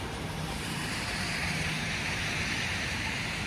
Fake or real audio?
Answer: fake